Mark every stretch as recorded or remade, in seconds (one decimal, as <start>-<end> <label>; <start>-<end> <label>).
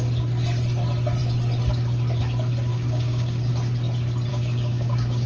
0.0-2.7 recorded; 2.7-3.5 remade; 3.5-4.3 recorded; 4.3-5.3 remade